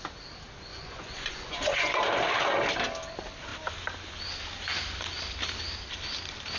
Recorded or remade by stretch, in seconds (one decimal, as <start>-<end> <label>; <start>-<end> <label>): 0.0-0.7 recorded; 0.7-2.0 remade; 2.0-6.6 recorded